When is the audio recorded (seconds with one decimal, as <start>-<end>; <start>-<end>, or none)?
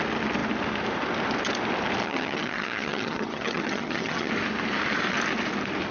0.0-2.0; 4.3-5.9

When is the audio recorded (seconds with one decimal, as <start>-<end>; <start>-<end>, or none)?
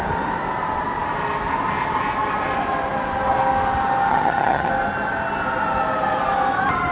0.0-4.1; 4.7-6.9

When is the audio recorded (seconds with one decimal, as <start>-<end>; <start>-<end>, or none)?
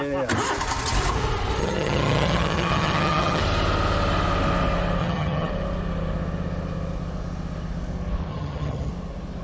0.0-1.6; 3.4-5.0; 5.5-8.3; 8.9-9.4